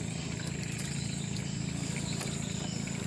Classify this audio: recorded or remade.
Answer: recorded